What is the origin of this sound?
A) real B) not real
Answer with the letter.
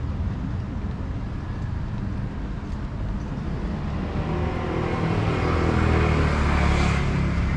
A